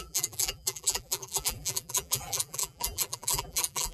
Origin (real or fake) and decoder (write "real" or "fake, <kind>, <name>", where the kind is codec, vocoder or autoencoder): fake, vocoder, BigVGAN v2